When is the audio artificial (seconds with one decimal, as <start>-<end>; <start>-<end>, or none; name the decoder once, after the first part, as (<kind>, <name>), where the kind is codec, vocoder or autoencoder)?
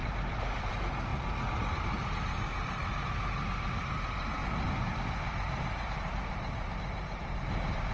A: 0.0-1.1 (vocoder, BigVGAN v2); 1.7-2.8; 3.8-7.9